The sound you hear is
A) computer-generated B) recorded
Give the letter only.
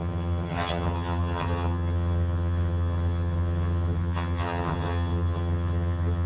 A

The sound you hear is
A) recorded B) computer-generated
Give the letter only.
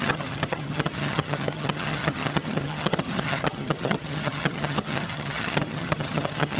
B